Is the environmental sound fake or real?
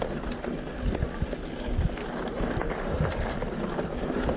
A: real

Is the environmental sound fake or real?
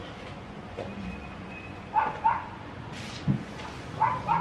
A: fake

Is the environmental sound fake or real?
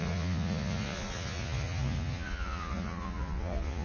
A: fake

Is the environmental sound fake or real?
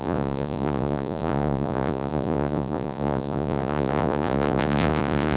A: fake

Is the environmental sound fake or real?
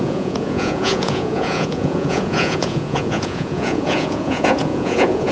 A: fake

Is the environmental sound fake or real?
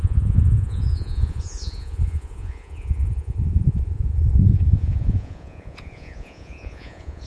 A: fake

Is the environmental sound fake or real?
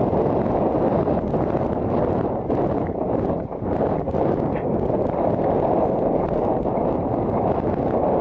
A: real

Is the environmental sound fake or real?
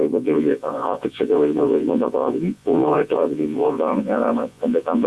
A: fake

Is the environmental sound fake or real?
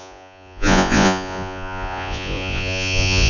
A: fake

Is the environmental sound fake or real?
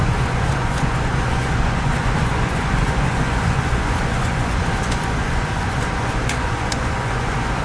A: fake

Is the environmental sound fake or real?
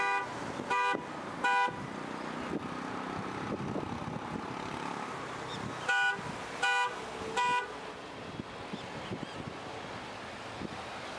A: real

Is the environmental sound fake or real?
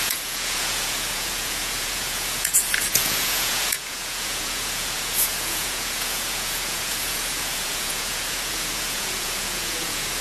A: fake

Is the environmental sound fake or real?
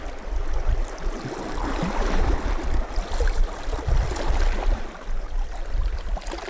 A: real